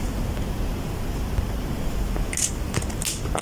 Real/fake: real